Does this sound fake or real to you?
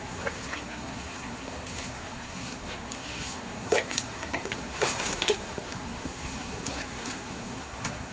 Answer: fake